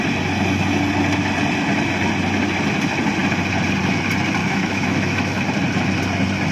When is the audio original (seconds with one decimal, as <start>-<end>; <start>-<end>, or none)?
0.0-4.4; 5.4-6.5